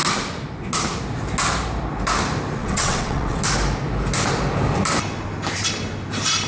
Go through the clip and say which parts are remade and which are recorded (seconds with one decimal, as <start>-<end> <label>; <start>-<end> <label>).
0.0-2.6 recorded; 2.6-3.4 remade; 3.4-6.5 recorded